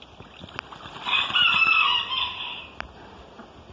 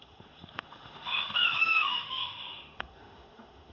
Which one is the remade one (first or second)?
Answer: second